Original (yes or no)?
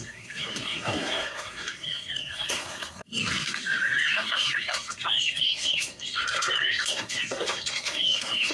no